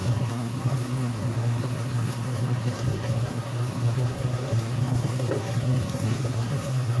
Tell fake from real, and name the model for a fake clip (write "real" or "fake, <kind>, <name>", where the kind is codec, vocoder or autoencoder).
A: fake, codec, SNAC